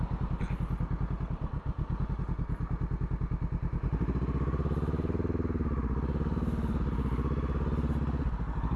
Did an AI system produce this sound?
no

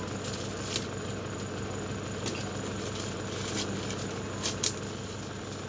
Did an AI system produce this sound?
no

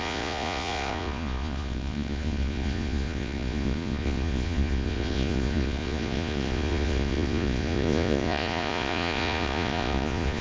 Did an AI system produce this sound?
yes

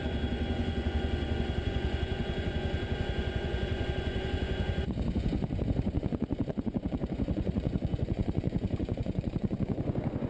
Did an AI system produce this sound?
yes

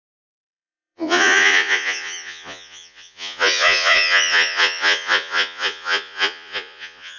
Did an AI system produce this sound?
yes